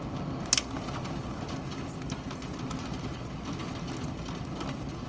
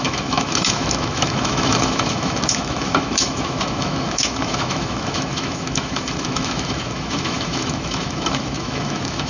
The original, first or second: first